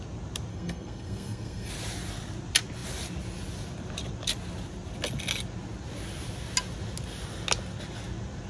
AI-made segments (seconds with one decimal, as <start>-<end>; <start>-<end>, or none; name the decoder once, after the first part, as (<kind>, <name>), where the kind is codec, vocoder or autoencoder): 0.5-1.7 (codec, SNAC)